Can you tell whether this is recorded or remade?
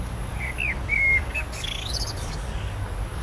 remade